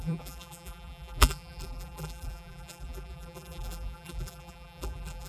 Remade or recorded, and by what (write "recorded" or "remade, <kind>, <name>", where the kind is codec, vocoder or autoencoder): remade, vocoder, BigVGAN v2